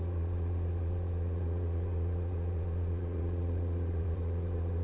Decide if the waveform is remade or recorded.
remade